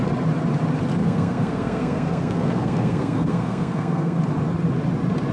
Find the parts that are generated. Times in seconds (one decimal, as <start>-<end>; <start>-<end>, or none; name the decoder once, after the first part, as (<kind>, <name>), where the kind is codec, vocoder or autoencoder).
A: 1.0-4.2 (codec, SNAC)